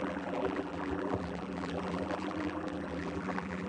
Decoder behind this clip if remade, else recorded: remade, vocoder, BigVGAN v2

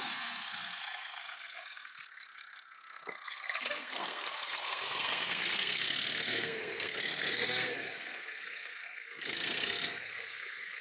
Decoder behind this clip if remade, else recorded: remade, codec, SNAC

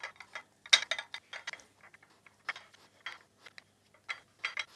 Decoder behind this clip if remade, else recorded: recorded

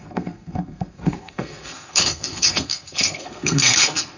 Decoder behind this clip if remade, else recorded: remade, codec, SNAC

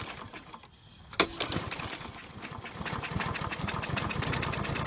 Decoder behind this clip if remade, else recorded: recorded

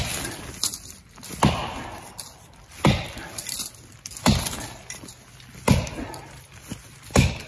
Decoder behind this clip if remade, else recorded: recorded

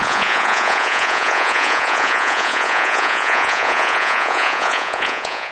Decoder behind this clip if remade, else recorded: remade, vocoder, Vocos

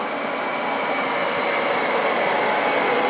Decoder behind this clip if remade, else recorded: recorded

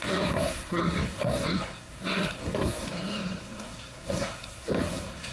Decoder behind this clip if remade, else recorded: remade, codec, SNAC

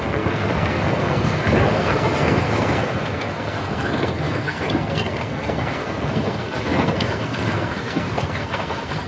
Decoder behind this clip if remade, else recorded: remade, codec, SNAC